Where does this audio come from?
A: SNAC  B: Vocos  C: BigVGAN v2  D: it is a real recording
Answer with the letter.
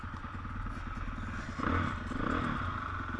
D